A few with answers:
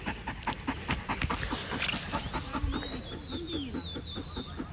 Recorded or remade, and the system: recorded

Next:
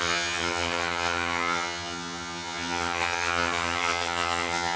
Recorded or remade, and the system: remade, vocoder, HiFi-GAN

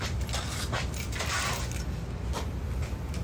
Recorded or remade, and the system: recorded